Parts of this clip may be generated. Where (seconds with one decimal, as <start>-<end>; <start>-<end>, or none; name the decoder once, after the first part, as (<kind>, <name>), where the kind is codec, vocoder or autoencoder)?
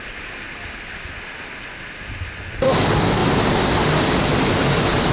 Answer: none